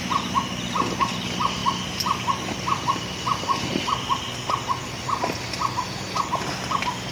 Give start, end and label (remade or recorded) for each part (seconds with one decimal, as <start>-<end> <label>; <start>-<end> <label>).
0.0-7.1 recorded